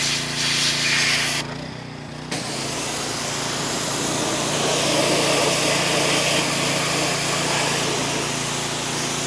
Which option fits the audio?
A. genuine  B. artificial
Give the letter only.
A